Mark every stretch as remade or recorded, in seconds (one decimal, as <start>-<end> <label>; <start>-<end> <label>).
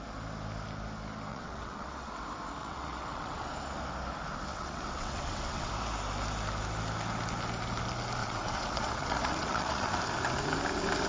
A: 0.0-1.3 recorded; 1.3-2.1 remade; 2.1-2.6 recorded; 2.6-3.5 remade; 3.5-4.5 recorded; 4.5-5.7 remade; 5.7-8.2 recorded; 8.2-9.9 remade; 9.9-11.1 recorded